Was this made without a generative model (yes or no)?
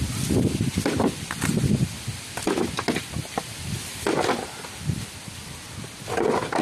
yes